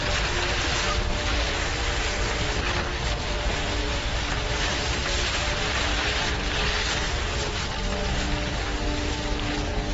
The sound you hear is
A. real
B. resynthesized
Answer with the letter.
A